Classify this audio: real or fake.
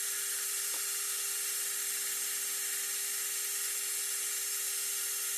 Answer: real